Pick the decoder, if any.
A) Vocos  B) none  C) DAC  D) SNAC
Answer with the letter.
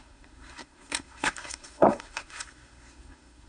D